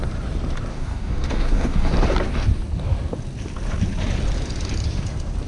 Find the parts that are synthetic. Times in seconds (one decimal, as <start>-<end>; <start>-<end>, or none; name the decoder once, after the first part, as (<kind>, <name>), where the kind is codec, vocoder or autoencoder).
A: 0.7-1.9 (codec, DAC)